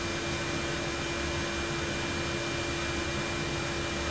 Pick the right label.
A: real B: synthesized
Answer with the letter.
A